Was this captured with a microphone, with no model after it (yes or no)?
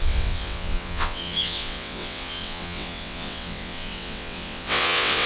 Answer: no